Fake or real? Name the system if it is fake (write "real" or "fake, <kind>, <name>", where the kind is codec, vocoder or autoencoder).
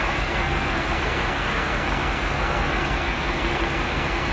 fake, codec, SNAC